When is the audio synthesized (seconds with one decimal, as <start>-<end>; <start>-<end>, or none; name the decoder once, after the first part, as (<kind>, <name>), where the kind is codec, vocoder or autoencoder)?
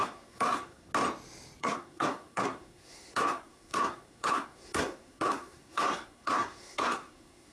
0.0-0.9 (codec, SNAC); 1.6-7.5